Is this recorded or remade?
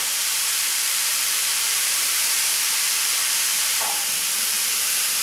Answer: remade